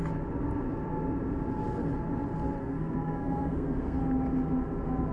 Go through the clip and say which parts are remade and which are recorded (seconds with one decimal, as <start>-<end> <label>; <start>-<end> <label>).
0.0-2.6 recorded; 2.6-4.0 remade; 4.0-5.1 recorded